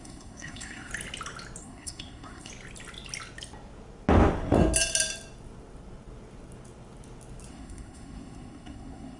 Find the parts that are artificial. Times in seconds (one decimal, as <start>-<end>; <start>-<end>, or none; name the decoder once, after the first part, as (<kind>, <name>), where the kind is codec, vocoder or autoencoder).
0.0-0.9 (codec, SNAC); 1.6-2.5; 7.5-9.2